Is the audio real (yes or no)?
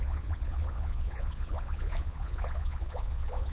no